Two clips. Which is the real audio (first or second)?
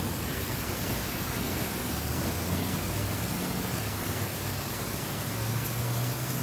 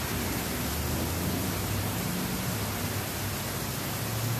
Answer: second